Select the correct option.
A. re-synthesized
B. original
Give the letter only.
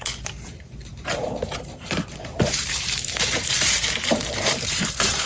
A